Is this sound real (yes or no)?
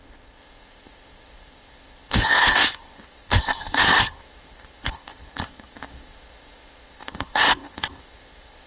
no